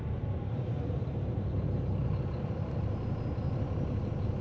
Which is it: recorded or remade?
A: recorded